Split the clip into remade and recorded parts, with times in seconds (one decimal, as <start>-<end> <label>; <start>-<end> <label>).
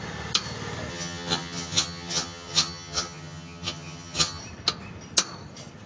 0.0-0.9 recorded; 0.9-4.4 remade; 4.4-5.9 recorded